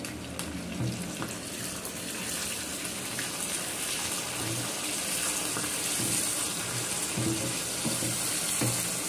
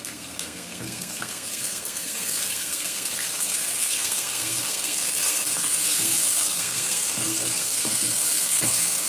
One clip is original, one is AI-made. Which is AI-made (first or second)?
second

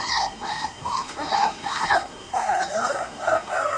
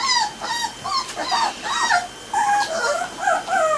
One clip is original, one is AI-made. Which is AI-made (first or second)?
first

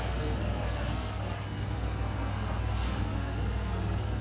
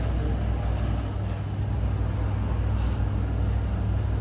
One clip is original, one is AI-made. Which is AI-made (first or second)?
first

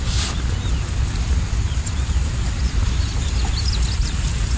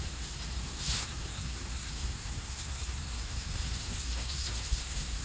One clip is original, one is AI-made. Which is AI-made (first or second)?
second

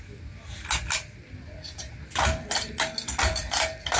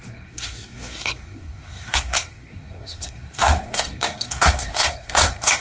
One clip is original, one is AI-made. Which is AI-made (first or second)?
second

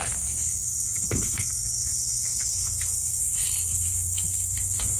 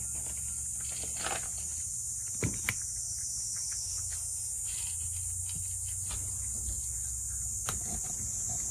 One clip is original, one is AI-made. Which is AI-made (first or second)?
first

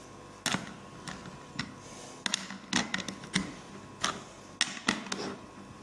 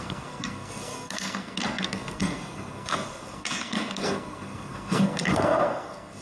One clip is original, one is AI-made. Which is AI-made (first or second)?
second